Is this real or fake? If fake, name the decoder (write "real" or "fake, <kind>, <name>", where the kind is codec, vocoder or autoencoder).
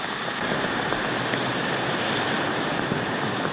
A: real